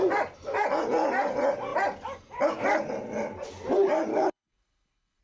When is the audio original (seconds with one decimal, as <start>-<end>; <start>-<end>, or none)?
0.0-4.1